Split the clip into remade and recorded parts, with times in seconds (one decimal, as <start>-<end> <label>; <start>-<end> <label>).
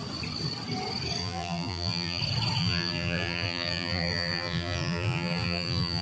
0.0-1.2 recorded; 1.2-2.2 remade; 2.2-2.6 recorded; 2.6-6.0 remade